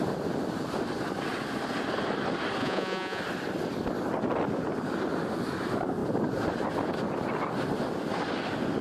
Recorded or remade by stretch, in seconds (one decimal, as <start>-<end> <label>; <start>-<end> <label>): 0.0-2.6 recorded; 2.6-3.2 remade; 3.2-8.8 recorded